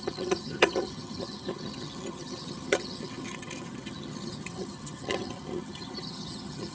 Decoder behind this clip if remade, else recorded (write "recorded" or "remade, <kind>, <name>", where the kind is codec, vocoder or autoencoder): remade, vocoder, HiFi-GAN